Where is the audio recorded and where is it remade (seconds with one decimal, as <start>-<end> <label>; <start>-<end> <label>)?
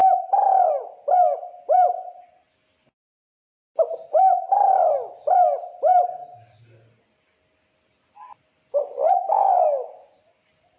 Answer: 0.0-10.8 recorded